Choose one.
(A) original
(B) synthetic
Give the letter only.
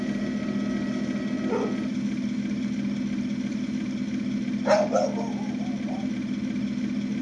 A